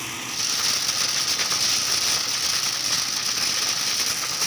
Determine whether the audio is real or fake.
real